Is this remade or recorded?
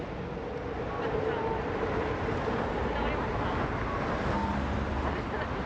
recorded